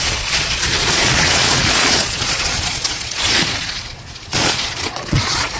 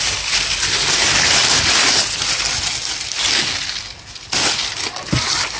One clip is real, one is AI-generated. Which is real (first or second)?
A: second